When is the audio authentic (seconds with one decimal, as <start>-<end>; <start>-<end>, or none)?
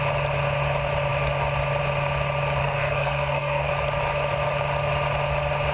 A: 0.0-2.6; 3.7-5.7